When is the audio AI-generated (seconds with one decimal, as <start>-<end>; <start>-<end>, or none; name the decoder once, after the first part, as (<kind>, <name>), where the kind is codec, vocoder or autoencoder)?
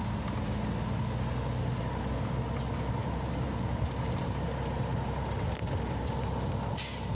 none